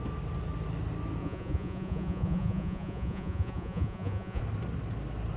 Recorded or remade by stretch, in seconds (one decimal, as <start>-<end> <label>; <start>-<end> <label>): 0.0-1.2 recorded; 1.2-4.4 remade; 4.4-5.4 recorded